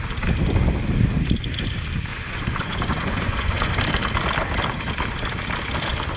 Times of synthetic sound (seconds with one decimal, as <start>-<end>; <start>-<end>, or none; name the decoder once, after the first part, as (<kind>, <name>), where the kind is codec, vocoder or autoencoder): 2.1-3.7 (vocoder, Vocos)